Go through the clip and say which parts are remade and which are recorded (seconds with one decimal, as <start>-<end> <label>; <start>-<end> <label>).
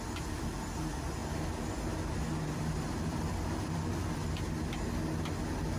0.0-1.2 recorded; 1.2-4.3 remade; 4.3-5.8 recorded